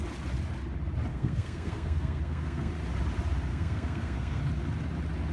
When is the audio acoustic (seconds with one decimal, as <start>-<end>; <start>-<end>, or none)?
0.0-1.1; 2.7-3.5; 4.4-5.3